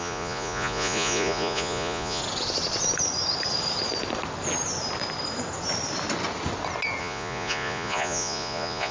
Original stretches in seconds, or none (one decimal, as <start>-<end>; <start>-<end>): 2.2-7.0